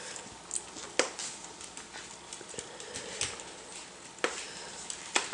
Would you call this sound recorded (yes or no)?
yes